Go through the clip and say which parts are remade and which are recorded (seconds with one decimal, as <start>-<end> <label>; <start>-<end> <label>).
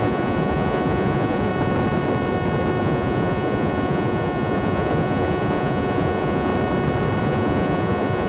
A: 0.0-1.5 remade; 1.5-2.8 recorded; 2.8-6.5 remade; 6.5-7.2 recorded; 7.2-8.3 remade